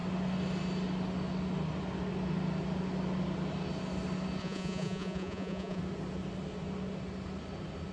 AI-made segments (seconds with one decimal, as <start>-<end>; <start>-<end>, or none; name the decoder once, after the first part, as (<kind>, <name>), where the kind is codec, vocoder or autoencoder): 4.4-5.8 (vocoder, Vocos)